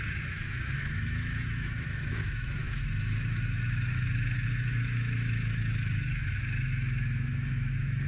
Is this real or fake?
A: fake